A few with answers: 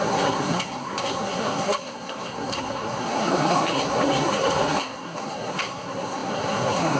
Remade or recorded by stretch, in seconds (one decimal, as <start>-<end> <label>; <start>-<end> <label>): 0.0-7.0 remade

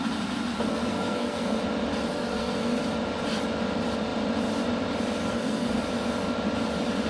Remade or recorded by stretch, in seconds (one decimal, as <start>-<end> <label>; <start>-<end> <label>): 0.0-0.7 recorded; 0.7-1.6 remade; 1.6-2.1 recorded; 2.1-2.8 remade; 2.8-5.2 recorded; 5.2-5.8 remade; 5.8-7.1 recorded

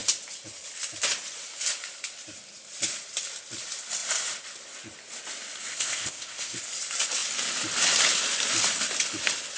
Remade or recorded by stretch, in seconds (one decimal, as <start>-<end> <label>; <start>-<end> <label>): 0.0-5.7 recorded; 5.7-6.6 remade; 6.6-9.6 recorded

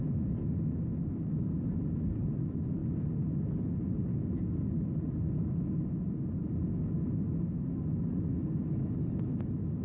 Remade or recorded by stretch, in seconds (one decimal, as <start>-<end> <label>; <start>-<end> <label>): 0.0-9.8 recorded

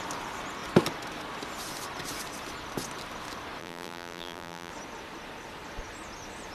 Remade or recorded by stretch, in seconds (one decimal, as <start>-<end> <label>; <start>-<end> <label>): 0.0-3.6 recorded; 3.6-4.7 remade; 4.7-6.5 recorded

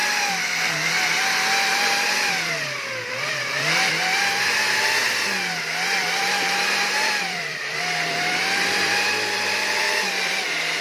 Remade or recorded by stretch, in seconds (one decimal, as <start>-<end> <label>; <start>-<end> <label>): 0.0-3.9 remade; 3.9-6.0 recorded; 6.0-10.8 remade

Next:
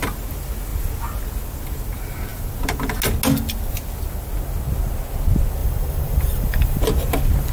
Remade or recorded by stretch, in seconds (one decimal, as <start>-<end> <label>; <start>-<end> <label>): 0.0-5.6 recorded; 5.6-6.8 remade; 6.8-7.5 recorded

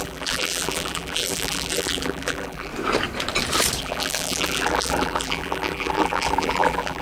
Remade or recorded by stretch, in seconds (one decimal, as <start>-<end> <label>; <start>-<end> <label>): 0.0-2.7 remade; 2.7-3.8 recorded; 3.8-7.0 remade